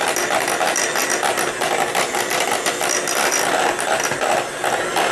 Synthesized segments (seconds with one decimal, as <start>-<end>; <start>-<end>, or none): none